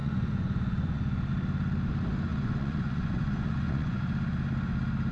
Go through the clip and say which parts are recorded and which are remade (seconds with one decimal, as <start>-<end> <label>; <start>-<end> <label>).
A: 0.0-1.3 remade; 1.3-2.3 recorded; 2.3-4.0 remade; 4.0-5.1 recorded